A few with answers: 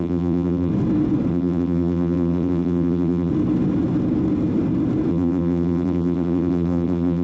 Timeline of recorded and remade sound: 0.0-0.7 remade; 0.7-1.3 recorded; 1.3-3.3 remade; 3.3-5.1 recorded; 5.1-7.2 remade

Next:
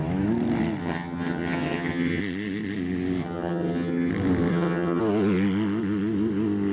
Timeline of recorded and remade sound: 0.0-0.8 recorded; 0.8-2.2 remade; 2.2-3.2 recorded; 3.2-4.1 remade; 4.1-4.5 recorded; 4.5-5.0 remade; 5.0-6.7 recorded

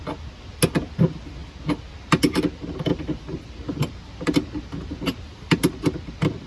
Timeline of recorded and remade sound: 0.0-6.5 recorded

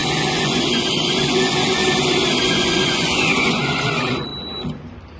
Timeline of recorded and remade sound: 0.0-1.8 remade; 1.8-2.4 recorded; 2.4-4.3 remade; 4.3-5.2 recorded

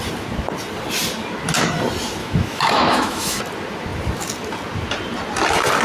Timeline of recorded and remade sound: 0.0-2.2 recorded; 2.2-3.4 remade; 3.4-5.8 recorded

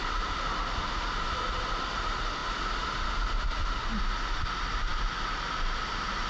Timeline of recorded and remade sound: 0.0-1.1 remade; 1.1-4.9 recorded; 4.9-5.4 remade; 5.4-6.3 recorded

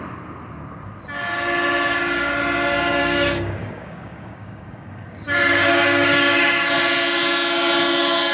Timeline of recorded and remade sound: 0.0-3.0 recorded; 3.0-6.7 remade; 6.7-8.3 recorded

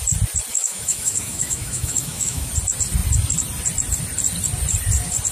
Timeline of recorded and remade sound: 0.0-0.5 recorded; 0.5-2.5 remade; 2.5-5.3 recorded